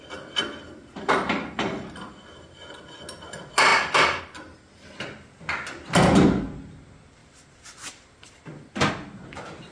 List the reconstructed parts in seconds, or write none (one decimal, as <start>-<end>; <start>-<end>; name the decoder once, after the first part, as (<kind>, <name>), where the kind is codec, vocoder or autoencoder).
3.7-4.2 (vocoder, BigVGAN v2); 7.2-8.9